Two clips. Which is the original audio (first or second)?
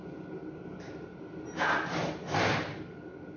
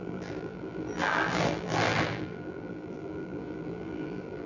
first